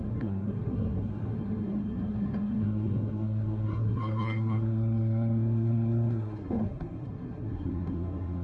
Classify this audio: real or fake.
fake